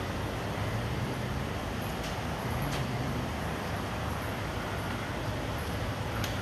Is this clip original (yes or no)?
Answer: yes